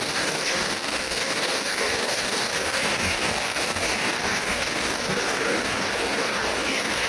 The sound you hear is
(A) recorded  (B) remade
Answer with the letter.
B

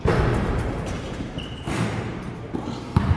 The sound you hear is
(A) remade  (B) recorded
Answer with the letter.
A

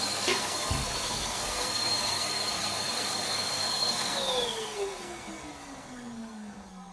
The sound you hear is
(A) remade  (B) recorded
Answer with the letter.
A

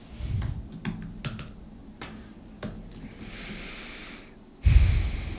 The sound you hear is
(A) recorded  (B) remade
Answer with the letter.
A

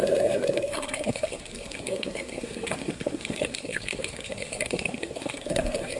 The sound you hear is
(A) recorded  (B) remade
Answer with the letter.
B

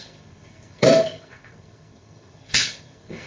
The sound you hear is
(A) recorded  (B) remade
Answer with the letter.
B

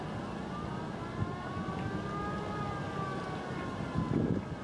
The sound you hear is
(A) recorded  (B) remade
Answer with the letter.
A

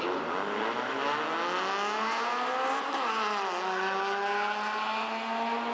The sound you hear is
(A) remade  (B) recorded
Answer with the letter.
B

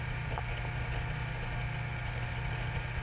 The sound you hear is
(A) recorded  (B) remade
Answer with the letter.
A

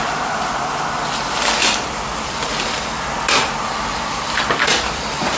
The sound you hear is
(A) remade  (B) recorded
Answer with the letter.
A